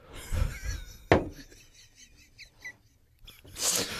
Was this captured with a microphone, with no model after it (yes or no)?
yes